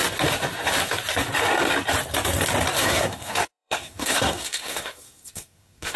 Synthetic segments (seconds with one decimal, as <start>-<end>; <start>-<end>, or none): 2.8-6.0